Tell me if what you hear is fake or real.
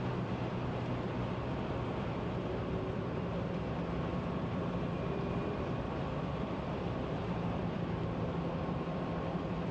fake